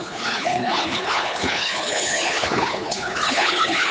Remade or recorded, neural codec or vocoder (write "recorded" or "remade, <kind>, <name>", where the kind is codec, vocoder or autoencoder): remade, codec, HILCodec